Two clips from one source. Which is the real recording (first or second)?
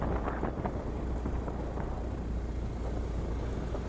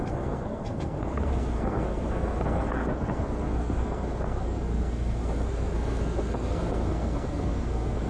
first